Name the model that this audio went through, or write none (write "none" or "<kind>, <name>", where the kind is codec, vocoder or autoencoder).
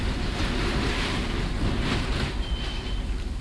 none